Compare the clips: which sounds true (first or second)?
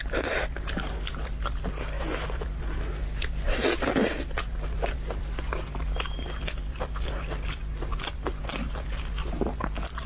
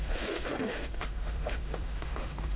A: first